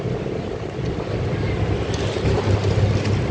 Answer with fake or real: real